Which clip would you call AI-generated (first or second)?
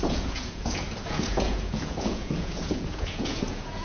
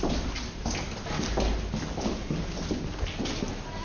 first